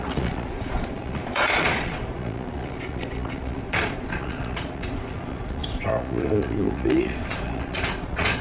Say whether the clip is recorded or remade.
remade